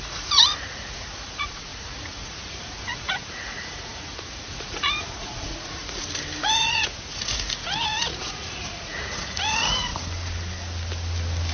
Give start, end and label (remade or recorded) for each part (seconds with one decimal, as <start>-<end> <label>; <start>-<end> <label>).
0.0-5.8 remade; 5.8-6.4 recorded; 6.4-9.9 remade; 9.9-11.5 recorded